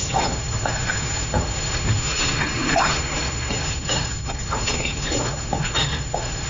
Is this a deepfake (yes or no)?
yes